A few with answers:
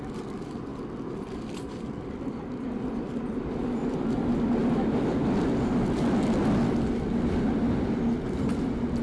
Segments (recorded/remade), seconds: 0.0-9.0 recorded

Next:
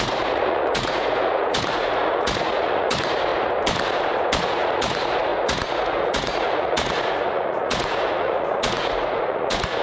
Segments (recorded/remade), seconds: 0.0-3.3 remade; 3.3-4.4 recorded; 4.4-9.8 remade

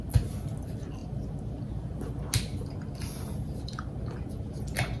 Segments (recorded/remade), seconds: 0.0-5.0 recorded

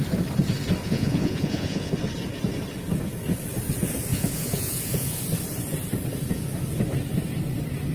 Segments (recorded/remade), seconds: 0.0-0.8 recorded; 0.8-1.9 remade; 1.9-4.1 recorded; 4.1-5.2 remade; 5.2-7.9 recorded

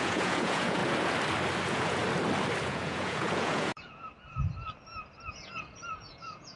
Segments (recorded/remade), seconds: 0.0-0.8 remade; 0.8-1.6 recorded; 1.6-2.0 remade; 2.0-2.6 recorded; 2.6-4.1 remade; 4.1-5.3 recorded; 5.3-6.6 remade